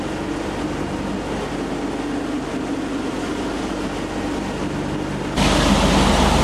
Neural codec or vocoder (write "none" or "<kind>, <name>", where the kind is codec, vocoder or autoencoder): none